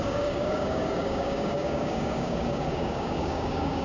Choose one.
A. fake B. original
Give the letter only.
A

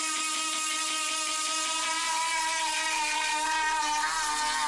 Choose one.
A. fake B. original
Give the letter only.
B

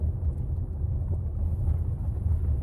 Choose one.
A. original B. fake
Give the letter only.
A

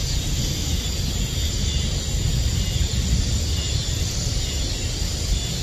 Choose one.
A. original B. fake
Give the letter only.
A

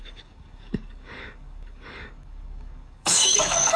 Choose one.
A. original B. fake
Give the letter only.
B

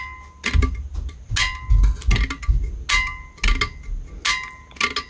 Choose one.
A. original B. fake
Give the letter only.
A